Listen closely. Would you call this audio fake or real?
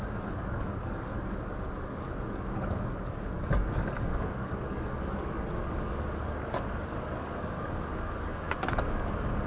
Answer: fake